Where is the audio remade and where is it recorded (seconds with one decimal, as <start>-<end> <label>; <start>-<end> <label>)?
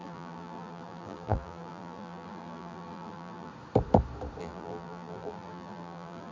0.0-3.5 remade; 3.5-4.4 recorded; 4.4-6.3 remade